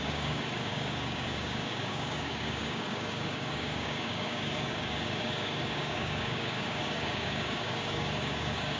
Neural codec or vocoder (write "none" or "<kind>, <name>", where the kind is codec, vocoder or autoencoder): codec, DAC